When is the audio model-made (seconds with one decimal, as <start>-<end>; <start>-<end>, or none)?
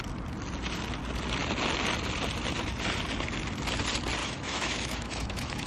4.2-5.7